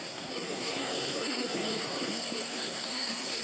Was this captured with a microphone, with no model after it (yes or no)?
no